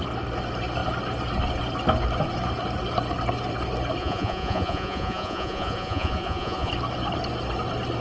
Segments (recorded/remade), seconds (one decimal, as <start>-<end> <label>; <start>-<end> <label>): 0.0-4.0 recorded; 4.0-6.7 remade; 6.7-8.0 recorded